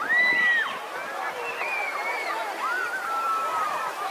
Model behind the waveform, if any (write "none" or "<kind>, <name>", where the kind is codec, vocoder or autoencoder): none